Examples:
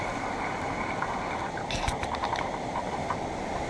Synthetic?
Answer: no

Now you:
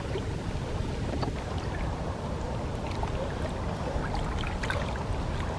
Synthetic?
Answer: no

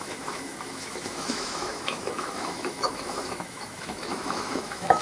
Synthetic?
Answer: yes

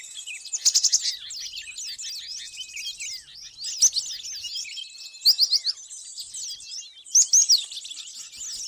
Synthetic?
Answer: no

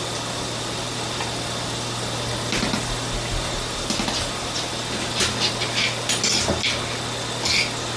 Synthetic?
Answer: no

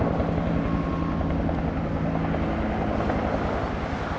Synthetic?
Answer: no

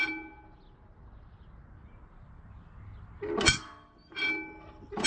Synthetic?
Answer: no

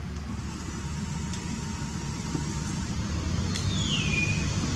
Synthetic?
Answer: no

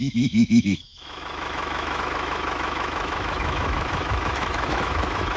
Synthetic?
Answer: yes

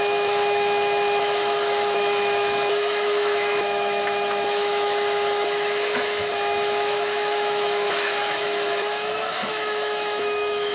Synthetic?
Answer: yes